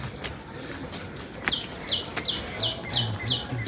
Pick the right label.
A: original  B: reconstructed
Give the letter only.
A